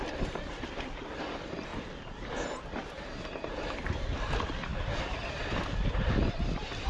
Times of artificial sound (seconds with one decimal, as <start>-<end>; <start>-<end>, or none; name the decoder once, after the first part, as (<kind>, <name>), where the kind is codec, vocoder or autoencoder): none